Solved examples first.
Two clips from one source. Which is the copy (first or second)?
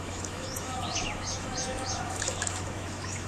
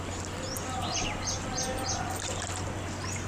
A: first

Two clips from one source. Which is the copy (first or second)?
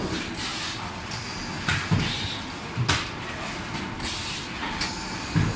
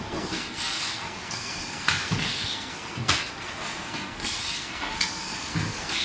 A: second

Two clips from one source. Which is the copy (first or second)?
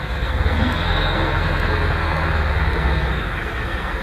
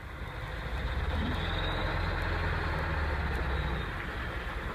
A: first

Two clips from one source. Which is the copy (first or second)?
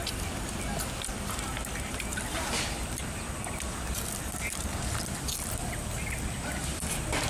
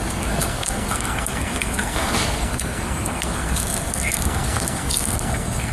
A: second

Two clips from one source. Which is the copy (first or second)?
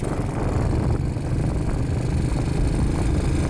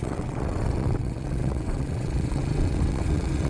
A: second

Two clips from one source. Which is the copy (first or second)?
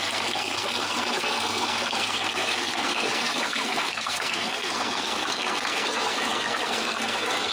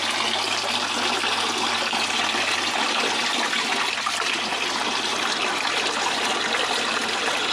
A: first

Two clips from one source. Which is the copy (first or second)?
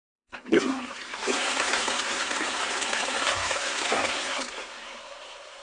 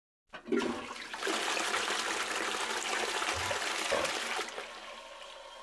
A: first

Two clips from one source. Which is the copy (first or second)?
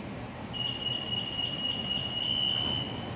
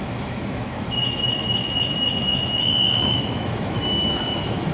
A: second